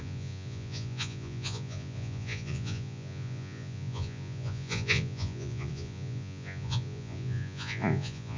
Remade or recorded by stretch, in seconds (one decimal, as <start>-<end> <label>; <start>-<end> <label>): 0.0-8.4 remade